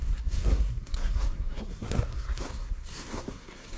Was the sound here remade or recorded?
remade